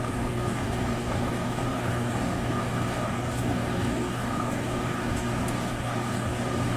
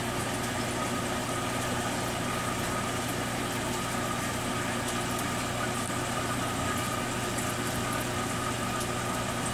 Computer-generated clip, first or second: first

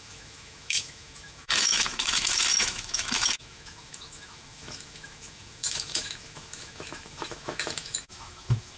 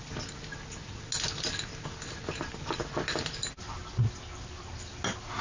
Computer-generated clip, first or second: first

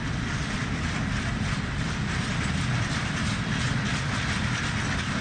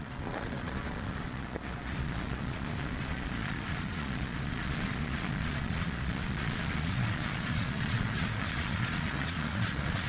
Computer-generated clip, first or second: second